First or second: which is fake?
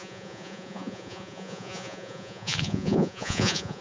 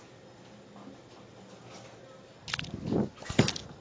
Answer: first